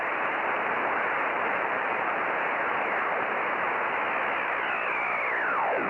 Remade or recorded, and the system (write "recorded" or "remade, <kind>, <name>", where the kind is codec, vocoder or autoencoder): recorded